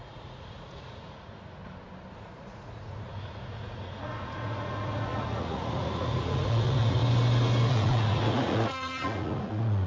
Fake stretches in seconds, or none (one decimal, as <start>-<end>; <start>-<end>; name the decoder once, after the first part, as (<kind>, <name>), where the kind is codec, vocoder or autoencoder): 0.0-1.6 (vocoder, Vocos); 2.2-7.0; 7.7-9.9